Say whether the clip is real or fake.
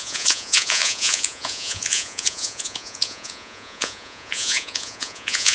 fake